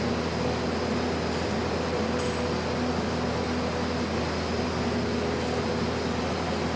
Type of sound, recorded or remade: recorded